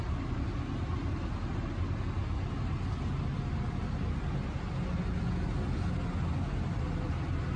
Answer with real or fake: real